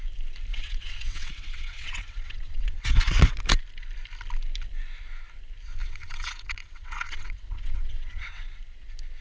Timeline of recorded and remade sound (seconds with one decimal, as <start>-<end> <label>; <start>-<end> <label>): 0.0-0.5 recorded; 0.5-3.4 remade; 3.4-5.8 recorded; 5.8-8.6 remade; 8.6-9.2 recorded